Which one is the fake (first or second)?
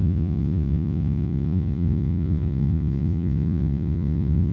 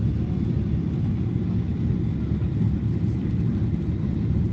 first